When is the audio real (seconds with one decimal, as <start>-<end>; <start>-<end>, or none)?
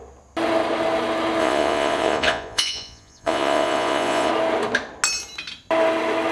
0.0-1.4; 4.3-6.3